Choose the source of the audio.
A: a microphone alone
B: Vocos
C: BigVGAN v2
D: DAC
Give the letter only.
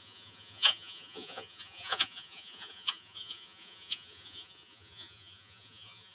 B